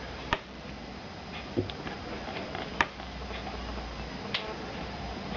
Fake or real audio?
real